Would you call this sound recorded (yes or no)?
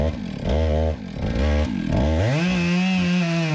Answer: yes